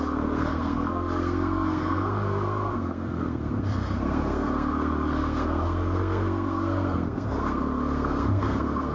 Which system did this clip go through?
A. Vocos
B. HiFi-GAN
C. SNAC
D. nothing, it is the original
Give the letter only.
C